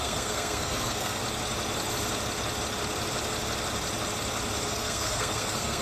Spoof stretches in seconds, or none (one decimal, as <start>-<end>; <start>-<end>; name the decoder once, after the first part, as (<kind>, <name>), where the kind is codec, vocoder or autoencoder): 0.0-1.2 (codec, SNAC); 4.7-5.8